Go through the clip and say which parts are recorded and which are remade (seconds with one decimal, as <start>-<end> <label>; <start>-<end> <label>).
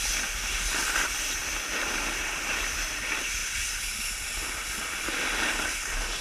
0.0-3.4 recorded; 3.4-4.0 remade; 4.0-6.2 recorded